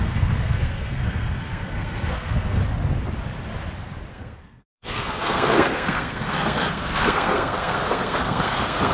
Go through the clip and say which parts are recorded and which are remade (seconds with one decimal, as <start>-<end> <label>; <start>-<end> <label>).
0.0-2.6 remade; 2.6-4.1 recorded; 4.1-8.9 remade